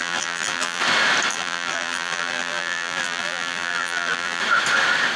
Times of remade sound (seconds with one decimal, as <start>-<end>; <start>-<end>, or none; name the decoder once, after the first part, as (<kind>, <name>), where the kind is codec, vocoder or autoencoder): 0.0-0.8 (vocoder, BigVGAN v2); 1.3-4.4